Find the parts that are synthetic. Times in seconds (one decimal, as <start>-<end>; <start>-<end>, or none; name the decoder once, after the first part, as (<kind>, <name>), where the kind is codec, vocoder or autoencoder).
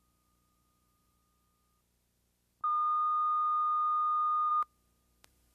0.0-1.2 (vocoder, BigVGAN v2); 4.5-5.5